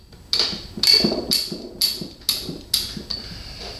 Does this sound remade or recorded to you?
recorded